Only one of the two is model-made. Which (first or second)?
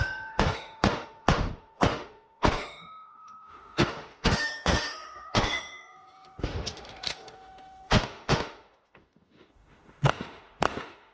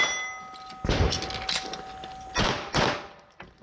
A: first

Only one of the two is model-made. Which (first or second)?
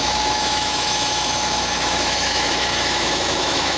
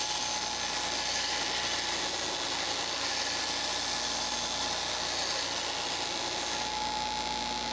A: first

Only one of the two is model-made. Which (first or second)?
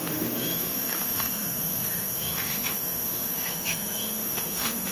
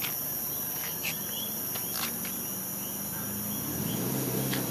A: first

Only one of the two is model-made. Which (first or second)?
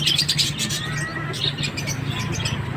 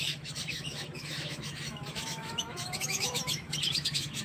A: second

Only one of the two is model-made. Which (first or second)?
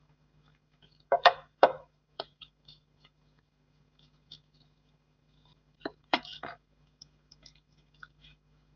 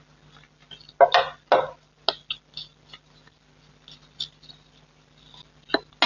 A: first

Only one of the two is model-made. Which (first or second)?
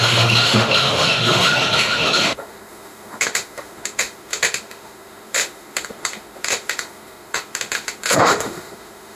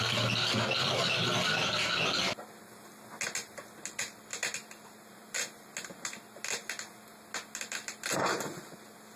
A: first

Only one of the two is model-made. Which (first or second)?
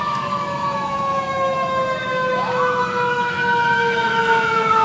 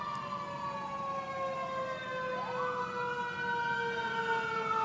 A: first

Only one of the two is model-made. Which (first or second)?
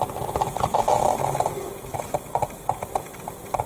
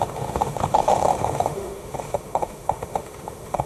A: second